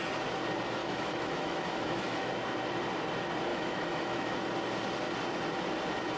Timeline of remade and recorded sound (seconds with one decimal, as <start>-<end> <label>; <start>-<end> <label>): 0.0-0.8 recorded; 0.8-2.3 remade; 2.3-3.5 recorded; 3.5-4.3 remade; 4.3-6.2 recorded

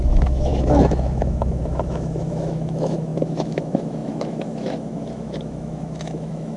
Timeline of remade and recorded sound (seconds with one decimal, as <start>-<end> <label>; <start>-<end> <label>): 0.0-6.6 remade

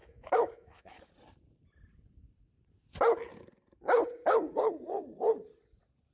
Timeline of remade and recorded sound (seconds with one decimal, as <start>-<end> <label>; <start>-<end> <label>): 0.0-1.1 remade; 1.1-6.1 recorded

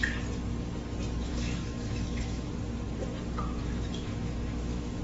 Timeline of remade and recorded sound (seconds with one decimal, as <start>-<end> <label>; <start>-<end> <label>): 0.0-1.3 recorded; 1.3-2.5 remade; 2.5-3.6 recorded; 3.6-5.0 remade

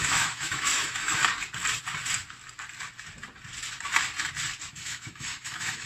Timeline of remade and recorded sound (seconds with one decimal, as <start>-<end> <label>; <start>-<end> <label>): 0.0-1.2 remade; 1.2-4.7 recorded; 4.7-5.9 remade

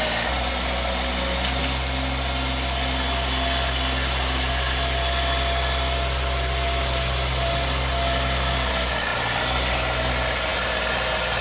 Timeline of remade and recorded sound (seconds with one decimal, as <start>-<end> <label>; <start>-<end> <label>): 0.0-11.4 recorded

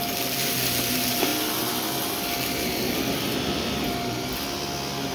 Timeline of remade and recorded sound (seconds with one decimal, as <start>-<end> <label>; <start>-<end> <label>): 0.0-5.1 recorded